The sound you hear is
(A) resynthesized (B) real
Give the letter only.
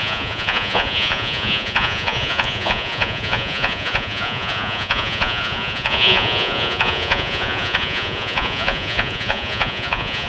A